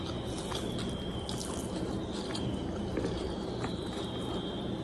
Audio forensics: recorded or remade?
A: recorded